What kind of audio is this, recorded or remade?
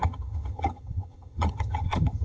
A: remade